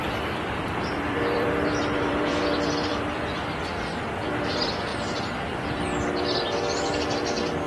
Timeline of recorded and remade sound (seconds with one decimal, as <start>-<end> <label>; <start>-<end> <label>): 0.0-4.9 remade; 4.9-6.4 recorded; 6.4-7.7 remade